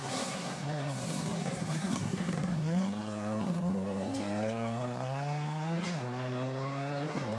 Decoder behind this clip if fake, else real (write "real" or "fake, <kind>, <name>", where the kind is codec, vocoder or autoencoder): fake, codec, SNAC